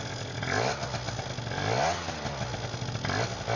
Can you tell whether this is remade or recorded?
recorded